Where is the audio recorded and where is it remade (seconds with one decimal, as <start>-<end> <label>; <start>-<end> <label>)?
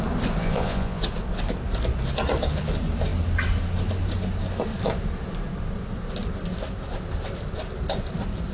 0.0-0.4 recorded; 0.4-1.0 remade; 1.0-8.5 recorded